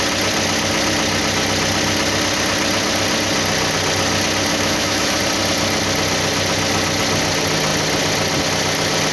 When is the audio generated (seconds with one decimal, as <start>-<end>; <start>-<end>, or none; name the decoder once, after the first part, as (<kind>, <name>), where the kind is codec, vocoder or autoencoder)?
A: 4.5-5.2 (autoencoder, DAC-VAE)